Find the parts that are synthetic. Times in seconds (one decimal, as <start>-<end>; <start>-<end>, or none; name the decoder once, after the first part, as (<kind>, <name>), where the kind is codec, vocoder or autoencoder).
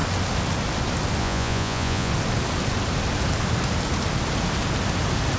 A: 1.2-2.1 (vocoder, Vocos)